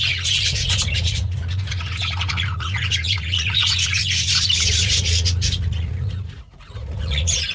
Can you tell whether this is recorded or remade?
remade